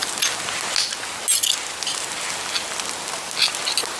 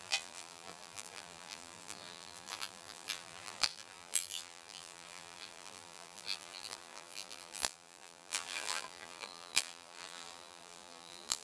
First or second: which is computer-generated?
second